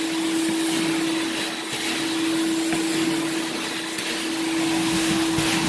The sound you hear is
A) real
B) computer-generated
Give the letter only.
A